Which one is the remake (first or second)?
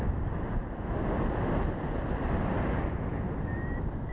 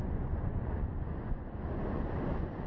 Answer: second